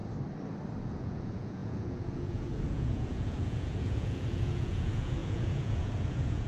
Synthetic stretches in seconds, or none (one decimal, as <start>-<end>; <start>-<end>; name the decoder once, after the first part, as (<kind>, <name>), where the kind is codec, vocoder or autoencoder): 0.8-6.5 (vocoder, Vocos)